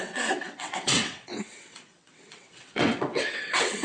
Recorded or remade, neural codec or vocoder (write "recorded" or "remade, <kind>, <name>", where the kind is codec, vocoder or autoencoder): remade, vocoder, WaveNeXt